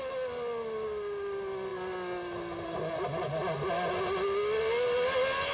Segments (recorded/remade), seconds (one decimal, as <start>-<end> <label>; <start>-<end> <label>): 0.0-5.5 recorded